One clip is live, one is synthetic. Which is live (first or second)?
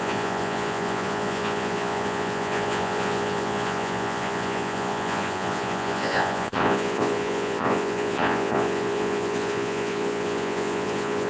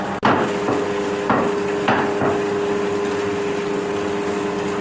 second